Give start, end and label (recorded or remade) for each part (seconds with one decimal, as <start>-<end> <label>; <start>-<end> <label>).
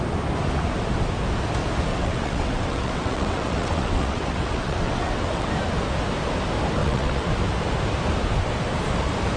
0.0-1.9 recorded; 1.9-5.5 remade; 5.5-6.8 recorded; 6.8-7.3 remade; 7.3-9.4 recorded